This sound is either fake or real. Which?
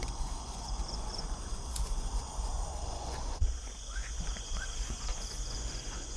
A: fake